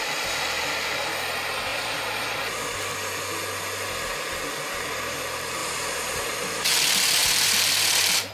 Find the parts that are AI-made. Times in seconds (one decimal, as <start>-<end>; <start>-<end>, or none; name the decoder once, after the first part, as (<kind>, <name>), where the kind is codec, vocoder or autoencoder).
1.7-2.4 (vocoder, BigVGAN v2); 5.6-6.7; 7.2-8.3